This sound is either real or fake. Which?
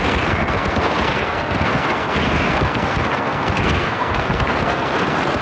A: fake